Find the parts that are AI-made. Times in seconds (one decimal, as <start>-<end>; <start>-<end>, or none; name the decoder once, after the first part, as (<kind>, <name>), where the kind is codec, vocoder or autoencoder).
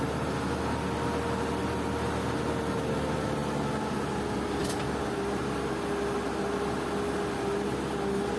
none